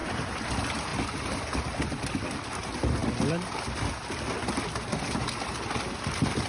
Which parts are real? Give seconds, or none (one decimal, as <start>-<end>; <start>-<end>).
0.5-0.9; 2.6-6.5